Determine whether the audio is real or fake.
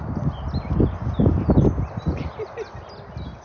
real